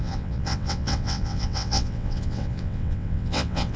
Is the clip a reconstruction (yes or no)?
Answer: yes